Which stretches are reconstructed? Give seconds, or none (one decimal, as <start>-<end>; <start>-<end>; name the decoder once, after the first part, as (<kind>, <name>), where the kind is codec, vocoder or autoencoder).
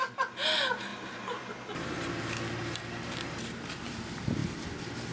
0.9-1.5 (vocoder, BigVGAN v2)